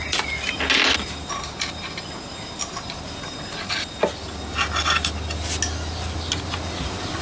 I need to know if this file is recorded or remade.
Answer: recorded